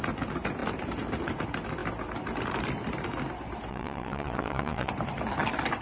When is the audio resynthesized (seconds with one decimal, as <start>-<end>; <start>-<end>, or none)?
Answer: 3.7-4.9